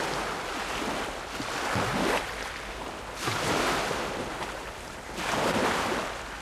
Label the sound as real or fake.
real